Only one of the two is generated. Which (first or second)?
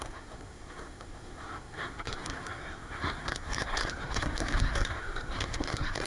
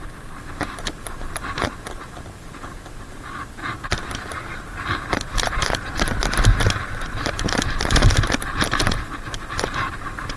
first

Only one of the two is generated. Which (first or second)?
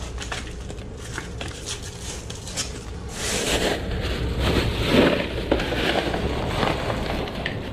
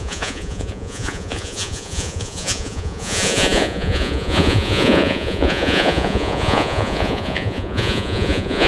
second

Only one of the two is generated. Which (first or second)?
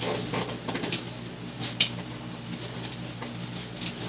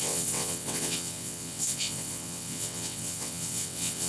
second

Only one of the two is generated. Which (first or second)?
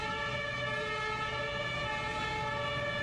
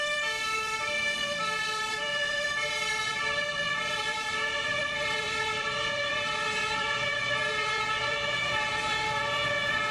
second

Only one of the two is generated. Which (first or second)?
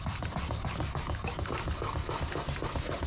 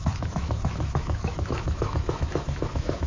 second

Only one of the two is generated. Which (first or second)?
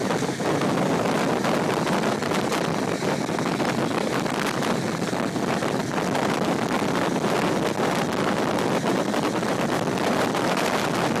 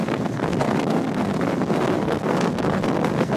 second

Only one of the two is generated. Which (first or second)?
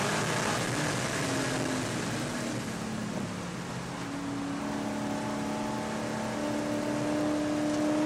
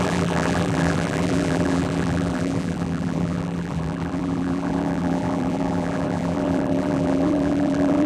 second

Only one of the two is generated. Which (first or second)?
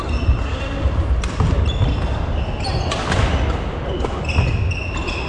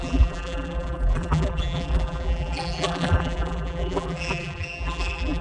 second